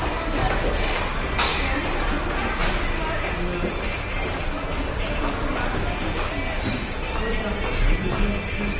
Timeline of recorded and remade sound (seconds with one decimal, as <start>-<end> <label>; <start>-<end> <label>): 0.0-8.8 recorded